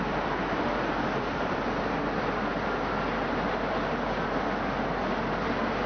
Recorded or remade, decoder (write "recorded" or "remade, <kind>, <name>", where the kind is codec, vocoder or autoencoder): recorded